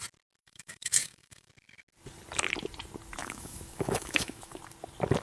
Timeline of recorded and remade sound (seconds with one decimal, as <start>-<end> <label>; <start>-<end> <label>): 0.0-0.4 recorded; 0.4-1.5 remade; 1.5-3.2 recorded; 3.2-4.6 remade; 4.6-5.2 recorded